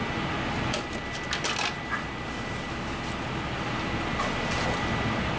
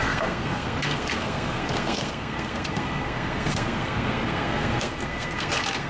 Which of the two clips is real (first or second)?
first